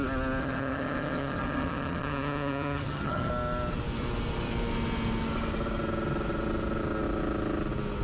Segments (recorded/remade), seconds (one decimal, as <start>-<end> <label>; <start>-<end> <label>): 0.0-0.4 recorded; 0.4-3.3 remade; 3.3-8.0 recorded